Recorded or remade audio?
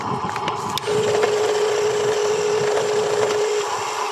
recorded